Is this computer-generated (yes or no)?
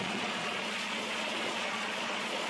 yes